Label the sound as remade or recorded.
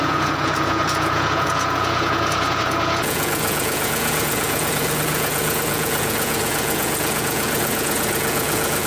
remade